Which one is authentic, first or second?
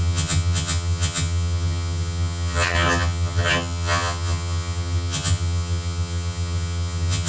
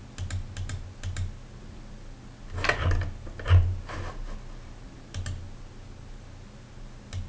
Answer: second